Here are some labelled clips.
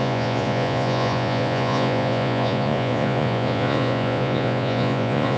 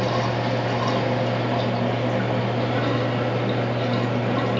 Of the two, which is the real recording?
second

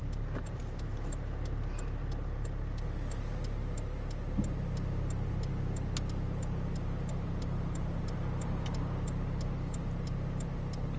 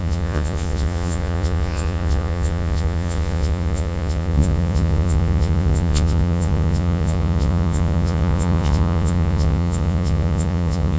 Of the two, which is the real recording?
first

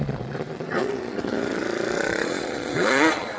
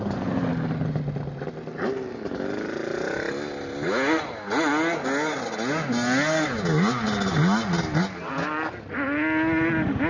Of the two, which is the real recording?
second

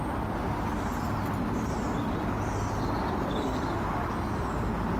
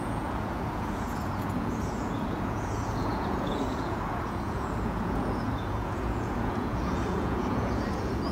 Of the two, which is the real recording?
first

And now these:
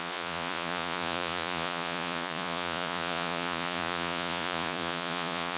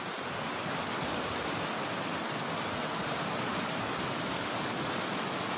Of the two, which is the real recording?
second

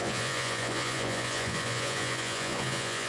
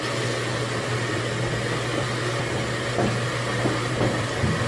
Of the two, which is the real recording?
second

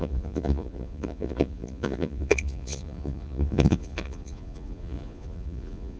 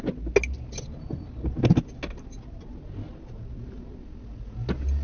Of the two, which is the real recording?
second